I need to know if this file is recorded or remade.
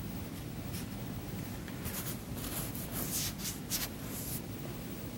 recorded